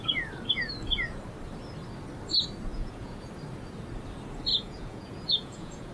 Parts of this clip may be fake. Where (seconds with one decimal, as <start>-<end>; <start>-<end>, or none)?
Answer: 2.7-3.3; 4.5-5.9